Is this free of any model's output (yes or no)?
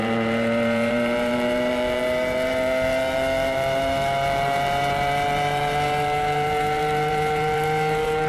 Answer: no